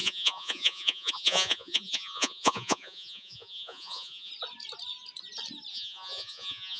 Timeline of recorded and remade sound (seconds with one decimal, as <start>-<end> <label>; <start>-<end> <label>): 0.0-4.3 remade; 4.3-5.7 recorded; 5.7-6.8 remade